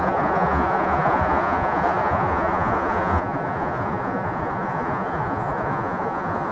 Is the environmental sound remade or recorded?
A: remade